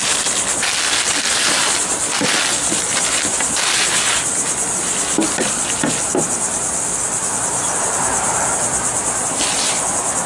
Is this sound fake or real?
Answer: real